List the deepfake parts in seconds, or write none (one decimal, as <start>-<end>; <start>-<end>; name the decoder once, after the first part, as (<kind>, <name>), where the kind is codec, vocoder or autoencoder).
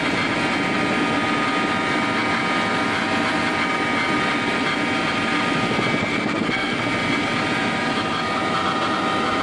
6.0-6.8 (codec, SNAC)